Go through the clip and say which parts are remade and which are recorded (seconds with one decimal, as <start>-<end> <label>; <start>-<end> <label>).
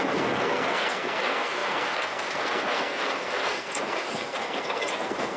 0.0-5.4 remade